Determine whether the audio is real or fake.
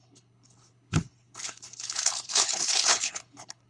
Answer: fake